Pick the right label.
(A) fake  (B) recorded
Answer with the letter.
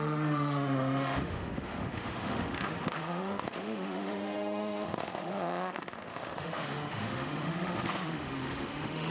A